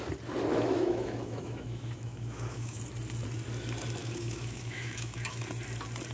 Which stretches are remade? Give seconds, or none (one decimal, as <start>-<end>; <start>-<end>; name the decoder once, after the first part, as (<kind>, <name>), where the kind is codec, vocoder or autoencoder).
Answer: 0.5-2.8 (autoencoder, DAC-VAE); 4.0-5.4